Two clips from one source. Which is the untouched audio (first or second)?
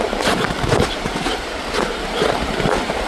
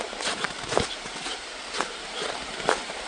second